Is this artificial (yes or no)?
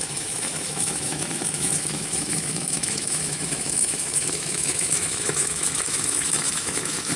yes